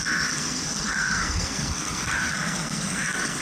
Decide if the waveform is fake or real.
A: fake